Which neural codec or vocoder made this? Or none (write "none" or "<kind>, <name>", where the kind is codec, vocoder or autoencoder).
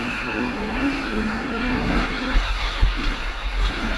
codec, SNAC